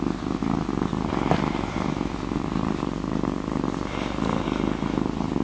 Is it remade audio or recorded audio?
recorded